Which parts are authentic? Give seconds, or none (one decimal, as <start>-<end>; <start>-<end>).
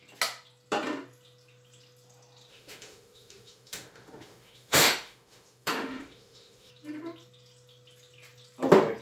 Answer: 0.0-2.5; 6.7-9.0